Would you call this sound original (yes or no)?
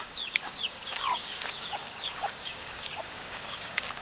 no